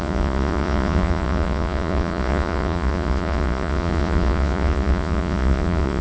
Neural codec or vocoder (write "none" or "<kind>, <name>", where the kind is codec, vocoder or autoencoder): vocoder, Vocos